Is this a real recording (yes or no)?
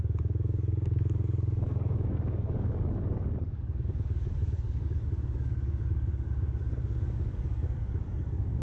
no